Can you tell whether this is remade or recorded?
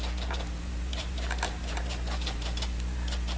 remade